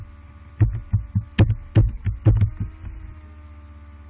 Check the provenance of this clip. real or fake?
real